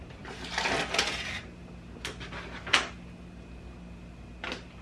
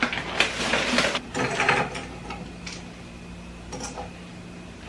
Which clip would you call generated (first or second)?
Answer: second